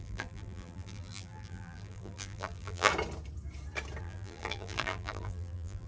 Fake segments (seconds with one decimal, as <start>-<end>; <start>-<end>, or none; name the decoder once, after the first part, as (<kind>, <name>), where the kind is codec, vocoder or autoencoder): 0.0-2.9 (vocoder, BigVGAN v2); 4.0-5.9